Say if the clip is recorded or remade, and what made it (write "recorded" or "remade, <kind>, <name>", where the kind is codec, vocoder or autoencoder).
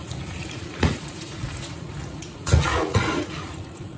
remade, vocoder, Vocos